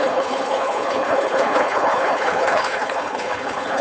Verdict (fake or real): fake